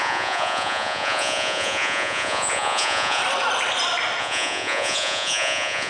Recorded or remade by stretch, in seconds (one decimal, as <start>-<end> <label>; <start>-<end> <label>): 0.0-3.2 remade; 3.2-4.2 recorded; 4.2-5.9 remade